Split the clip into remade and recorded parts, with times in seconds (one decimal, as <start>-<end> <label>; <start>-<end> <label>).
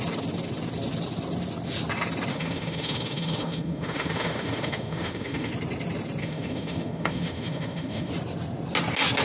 0.0-2.3 recorded; 2.3-5.5 remade; 5.5-6.2 recorded; 6.2-8.1 remade; 8.1-9.2 recorded